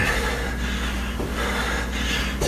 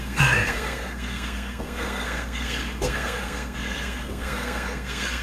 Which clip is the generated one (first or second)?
second